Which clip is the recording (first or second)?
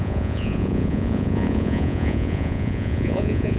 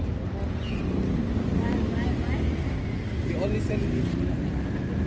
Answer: second